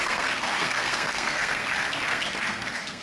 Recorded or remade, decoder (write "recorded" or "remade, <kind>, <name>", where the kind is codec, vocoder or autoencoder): remade, codec, SNAC